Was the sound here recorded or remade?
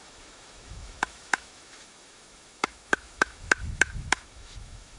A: remade